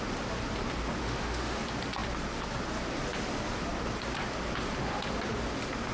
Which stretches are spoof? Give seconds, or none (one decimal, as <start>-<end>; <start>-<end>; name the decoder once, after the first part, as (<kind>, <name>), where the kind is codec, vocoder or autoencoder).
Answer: 1.0-1.6 (autoencoder, DAC-VAE)

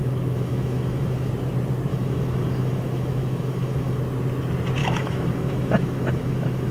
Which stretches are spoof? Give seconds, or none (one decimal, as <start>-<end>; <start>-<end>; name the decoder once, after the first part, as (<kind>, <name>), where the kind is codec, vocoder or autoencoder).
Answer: 0.0-1.3 (autoencoder, DAC-VAE); 1.9-4.0; 4.8-6.7

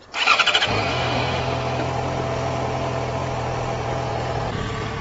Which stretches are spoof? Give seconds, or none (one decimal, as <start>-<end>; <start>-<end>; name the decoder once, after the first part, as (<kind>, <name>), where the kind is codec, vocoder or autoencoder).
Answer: 0.9-1.4 (autoencoder, DAC-VAE)

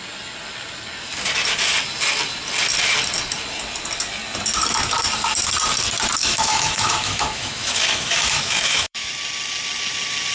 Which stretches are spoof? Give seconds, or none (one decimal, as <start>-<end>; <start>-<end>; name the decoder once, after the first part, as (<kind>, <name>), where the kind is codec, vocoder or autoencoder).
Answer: 6.2-9.1 (autoencoder, DAC-VAE)

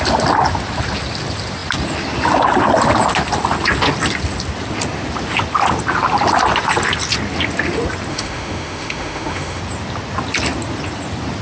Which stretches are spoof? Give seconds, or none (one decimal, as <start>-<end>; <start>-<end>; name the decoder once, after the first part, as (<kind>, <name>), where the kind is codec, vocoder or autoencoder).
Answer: 8.1-9.6 (autoencoder, DAC-VAE)

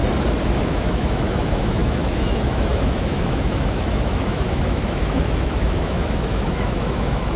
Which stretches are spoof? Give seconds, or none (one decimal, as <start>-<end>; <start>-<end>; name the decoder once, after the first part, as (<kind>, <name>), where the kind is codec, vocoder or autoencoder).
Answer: 0.6-7.4 (autoencoder, DAC-VAE)

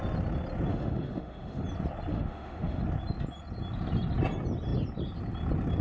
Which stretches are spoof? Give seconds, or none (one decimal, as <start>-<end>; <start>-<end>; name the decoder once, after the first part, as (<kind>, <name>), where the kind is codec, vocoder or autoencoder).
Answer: 0.7-1.6 (autoencoder, DAC-VAE); 2.1-2.8